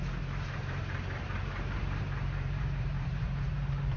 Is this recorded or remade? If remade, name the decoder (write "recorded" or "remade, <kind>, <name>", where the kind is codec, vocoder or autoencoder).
remade, vocoder, BigVGAN v2